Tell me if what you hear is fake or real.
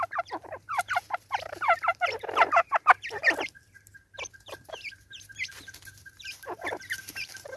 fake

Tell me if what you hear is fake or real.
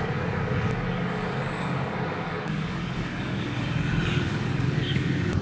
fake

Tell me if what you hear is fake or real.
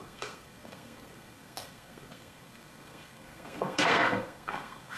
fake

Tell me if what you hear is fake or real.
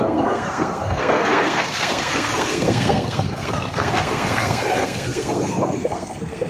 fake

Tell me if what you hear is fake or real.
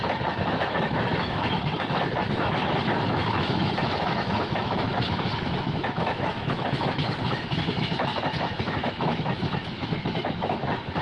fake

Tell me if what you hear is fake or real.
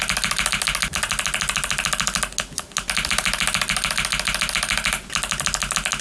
real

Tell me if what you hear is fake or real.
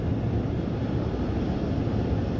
real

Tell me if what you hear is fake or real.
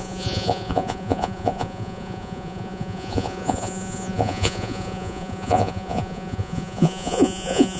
fake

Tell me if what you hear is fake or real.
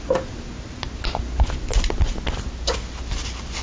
real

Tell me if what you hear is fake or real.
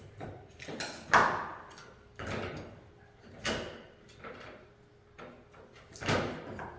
real